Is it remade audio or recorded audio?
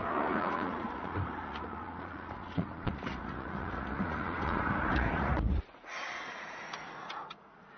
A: remade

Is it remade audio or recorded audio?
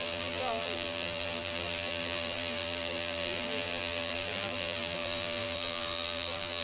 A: remade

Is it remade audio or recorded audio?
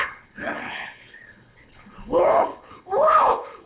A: remade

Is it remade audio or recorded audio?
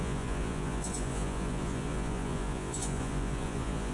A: remade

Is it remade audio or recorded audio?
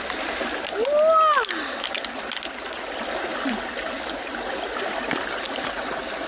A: recorded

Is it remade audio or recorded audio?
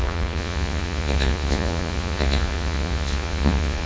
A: remade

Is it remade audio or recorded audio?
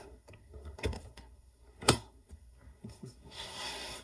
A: remade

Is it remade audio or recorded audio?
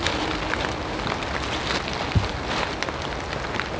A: recorded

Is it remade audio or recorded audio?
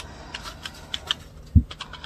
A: recorded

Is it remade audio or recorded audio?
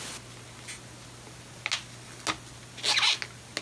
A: recorded